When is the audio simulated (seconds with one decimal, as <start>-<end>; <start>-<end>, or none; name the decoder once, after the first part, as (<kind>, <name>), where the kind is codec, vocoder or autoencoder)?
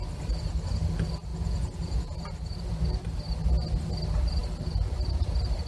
1.3-2.3 (vocoder, Vocos)